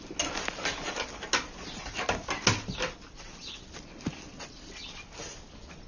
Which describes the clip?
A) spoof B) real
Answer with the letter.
B